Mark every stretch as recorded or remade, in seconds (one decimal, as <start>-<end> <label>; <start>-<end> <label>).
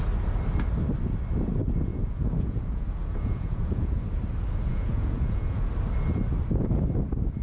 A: 0.0-1.9 recorded; 1.9-4.0 remade; 4.0-4.7 recorded; 4.7-5.7 remade; 5.7-7.4 recorded